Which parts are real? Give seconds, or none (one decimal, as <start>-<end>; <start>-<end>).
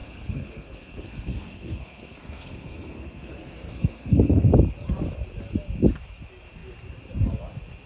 4.5-7.9